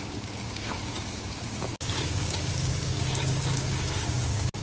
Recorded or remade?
remade